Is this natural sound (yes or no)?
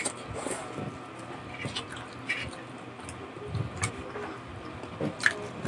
yes